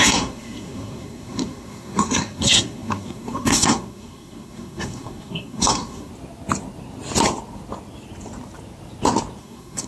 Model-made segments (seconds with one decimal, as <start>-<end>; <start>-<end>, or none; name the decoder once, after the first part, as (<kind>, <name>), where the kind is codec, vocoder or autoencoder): 0.0-6.1 (codec, SNAC); 9.4-9.9